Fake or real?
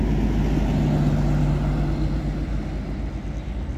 real